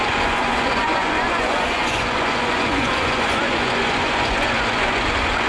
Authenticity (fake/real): fake